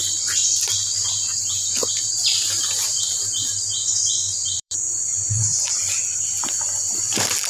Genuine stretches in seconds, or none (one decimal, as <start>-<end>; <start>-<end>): none